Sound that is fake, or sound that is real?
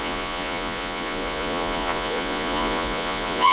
fake